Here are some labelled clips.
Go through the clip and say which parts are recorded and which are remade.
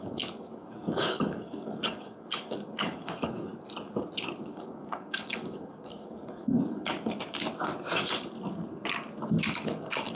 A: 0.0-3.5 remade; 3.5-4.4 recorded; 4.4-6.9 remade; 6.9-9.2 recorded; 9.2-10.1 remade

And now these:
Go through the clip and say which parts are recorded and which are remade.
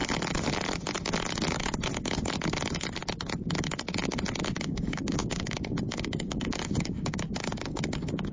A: 0.0-4.6 recorded; 4.6-8.3 remade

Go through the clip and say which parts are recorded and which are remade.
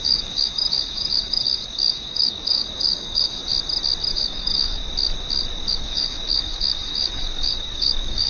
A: 0.0-3.5 remade; 3.5-4.1 recorded; 4.1-4.8 remade; 4.8-5.7 recorded; 5.7-8.3 remade